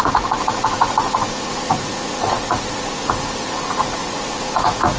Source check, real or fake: fake